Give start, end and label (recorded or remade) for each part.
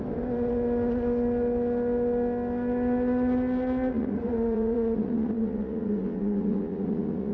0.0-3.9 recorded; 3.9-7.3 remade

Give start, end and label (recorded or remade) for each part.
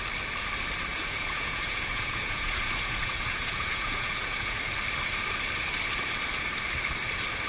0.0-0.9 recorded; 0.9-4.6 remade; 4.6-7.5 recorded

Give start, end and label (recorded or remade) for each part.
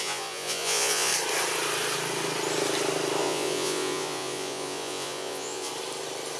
0.0-1.1 remade; 1.1-3.2 recorded; 3.2-5.7 remade; 5.7-6.4 recorded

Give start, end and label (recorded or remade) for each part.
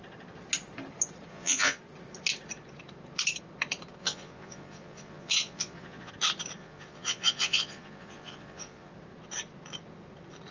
0.0-1.3 recorded; 1.3-1.8 remade; 1.8-4.0 recorded; 4.0-6.1 remade; 6.1-6.6 recorded; 6.6-8.9 remade; 8.9-10.5 recorded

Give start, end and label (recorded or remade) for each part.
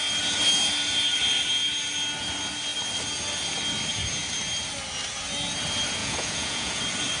0.0-6.0 recorded; 6.0-6.8 remade; 6.8-7.2 recorded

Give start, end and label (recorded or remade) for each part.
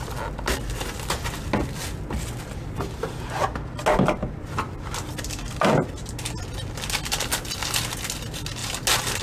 0.0-9.2 recorded